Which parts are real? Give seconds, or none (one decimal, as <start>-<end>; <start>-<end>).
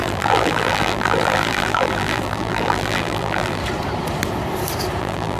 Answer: 3.6-5.0